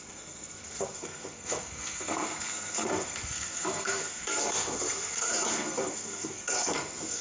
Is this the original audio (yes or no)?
no